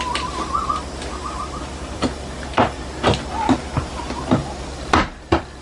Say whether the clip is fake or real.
real